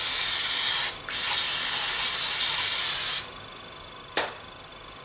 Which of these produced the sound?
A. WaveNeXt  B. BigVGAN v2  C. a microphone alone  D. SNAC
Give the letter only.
B